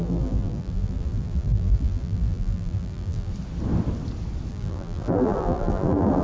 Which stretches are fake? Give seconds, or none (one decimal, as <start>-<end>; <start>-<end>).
0.0-3.3; 4.5-6.2